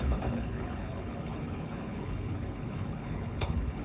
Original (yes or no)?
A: no